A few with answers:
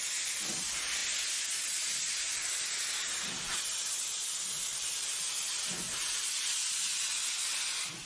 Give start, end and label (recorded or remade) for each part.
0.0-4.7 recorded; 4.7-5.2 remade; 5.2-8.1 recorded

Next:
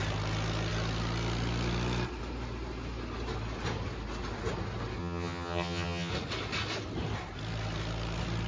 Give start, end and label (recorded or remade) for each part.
0.0-5.0 recorded; 5.0-6.1 remade; 6.1-8.5 recorded

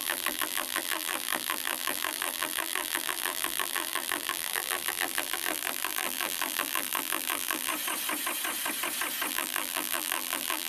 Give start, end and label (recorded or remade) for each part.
0.0-7.7 remade; 7.7-9.3 recorded; 9.3-10.7 remade

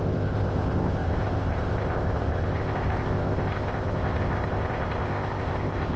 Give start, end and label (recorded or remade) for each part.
0.0-6.0 remade